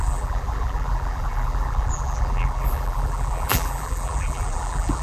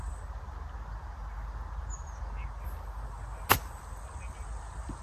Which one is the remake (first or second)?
first